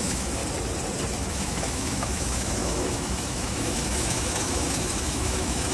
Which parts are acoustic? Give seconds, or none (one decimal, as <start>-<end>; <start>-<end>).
0.4-1.3